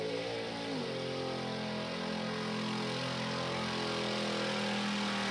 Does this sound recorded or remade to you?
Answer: recorded